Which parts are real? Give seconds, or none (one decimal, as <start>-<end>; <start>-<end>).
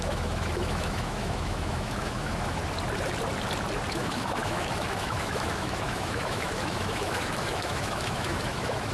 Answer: 2.6-3.9